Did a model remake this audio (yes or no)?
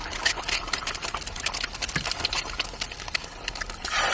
no